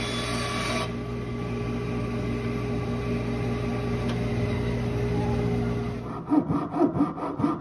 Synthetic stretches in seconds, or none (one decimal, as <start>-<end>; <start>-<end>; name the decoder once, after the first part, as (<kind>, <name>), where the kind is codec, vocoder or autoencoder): none